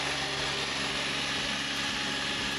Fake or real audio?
real